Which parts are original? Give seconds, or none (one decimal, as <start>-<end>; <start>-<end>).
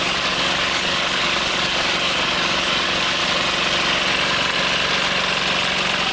3.2-6.1